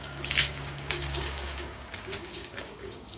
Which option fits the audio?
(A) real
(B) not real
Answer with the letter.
B